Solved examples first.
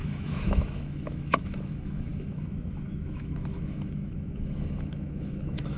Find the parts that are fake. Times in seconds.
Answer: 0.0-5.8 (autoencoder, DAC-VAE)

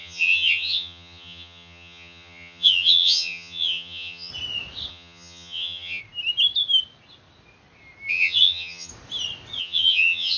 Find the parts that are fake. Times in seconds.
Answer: 0.0-4.3 (vocoder, HiFi-GAN); 4.9-6.0; 8.1-8.9; 9.6-10.4

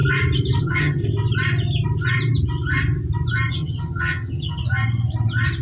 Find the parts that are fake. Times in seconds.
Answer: 0.6-1.0 (vocoder, HiFi-GAN); 3.5-4.6

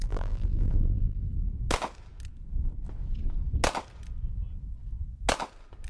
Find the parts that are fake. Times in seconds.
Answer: 0.0-1.3 (vocoder, BigVGAN v2)